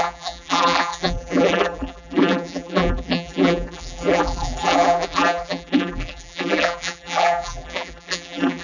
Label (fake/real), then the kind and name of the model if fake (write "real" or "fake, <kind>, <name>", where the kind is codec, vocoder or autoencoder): fake, vocoder, BigVGAN v2